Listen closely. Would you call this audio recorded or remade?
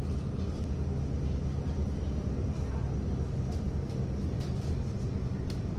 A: recorded